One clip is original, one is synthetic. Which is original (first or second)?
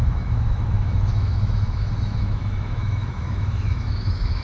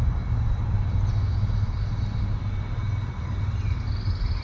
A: second